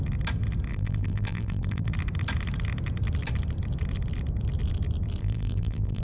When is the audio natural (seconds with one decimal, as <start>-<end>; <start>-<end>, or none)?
0.0-0.7; 1.9-5.2